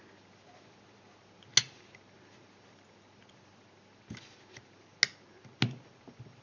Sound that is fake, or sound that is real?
real